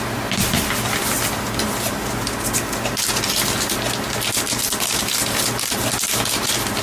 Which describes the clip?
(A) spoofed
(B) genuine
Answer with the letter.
B